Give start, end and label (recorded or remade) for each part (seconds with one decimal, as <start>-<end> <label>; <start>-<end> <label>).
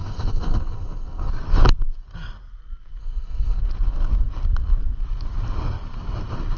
0.0-1.3 remade; 1.3-3.0 recorded; 3.0-3.6 remade; 3.6-6.6 recorded